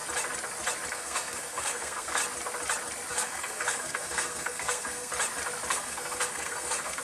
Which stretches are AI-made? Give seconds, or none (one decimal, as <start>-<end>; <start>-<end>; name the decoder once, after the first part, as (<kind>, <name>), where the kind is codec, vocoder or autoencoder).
0.9-2.2 (codec, SNAC); 3.1-5.1; 5.7-7.0